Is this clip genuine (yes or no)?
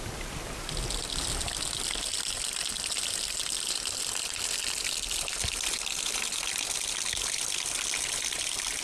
yes